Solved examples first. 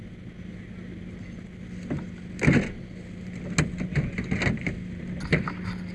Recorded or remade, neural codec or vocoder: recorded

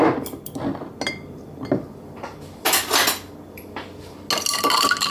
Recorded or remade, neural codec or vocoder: recorded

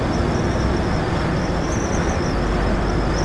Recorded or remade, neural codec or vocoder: recorded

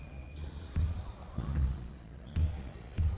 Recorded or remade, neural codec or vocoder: remade, vocoder, Vocos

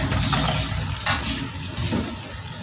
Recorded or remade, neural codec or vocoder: recorded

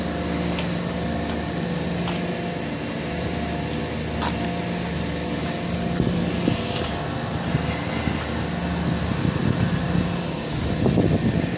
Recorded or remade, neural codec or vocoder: recorded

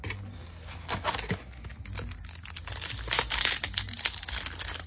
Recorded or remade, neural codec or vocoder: recorded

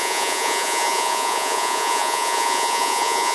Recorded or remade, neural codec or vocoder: remade, vocoder, Vocos